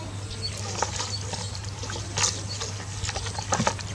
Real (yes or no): yes